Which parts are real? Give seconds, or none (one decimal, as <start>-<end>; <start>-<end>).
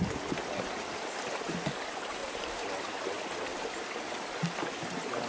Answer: 0.0-2.2; 3.0-5.3